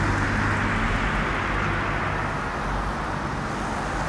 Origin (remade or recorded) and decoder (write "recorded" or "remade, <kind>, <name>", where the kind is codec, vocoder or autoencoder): recorded